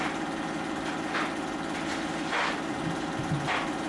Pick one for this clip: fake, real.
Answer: real